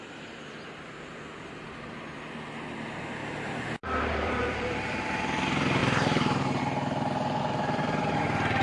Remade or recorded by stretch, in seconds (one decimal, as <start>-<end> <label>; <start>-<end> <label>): 0.0-3.2 recorded; 3.2-5.0 remade; 5.0-5.8 recorded; 5.8-6.6 remade; 6.6-8.6 recorded